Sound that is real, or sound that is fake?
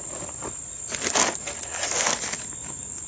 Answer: real